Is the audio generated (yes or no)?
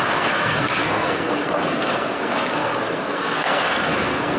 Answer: yes